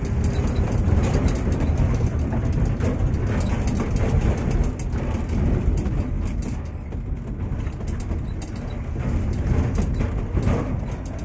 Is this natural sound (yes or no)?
yes